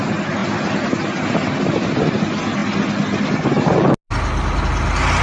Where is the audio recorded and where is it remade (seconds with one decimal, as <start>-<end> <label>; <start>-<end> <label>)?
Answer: 0.0-5.2 recorded